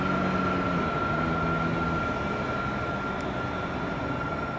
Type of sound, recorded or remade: recorded